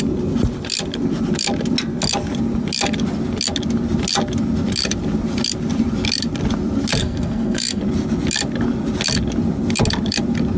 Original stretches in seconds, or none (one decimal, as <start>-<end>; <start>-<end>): 0.0-7.0; 7.8-10.6